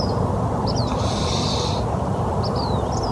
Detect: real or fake real